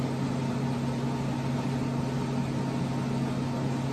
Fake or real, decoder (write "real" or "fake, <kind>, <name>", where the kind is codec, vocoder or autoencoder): real